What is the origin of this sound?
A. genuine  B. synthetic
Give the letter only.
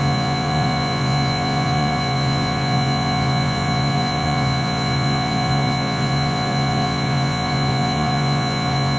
B